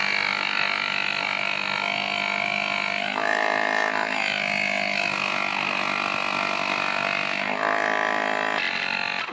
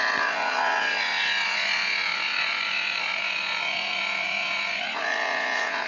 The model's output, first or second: second